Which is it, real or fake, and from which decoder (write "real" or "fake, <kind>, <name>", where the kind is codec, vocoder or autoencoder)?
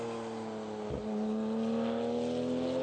real